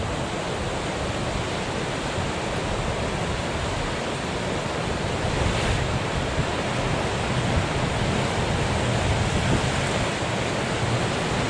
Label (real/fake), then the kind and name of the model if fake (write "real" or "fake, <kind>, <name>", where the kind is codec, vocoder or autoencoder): real